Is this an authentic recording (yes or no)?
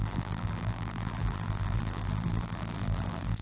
no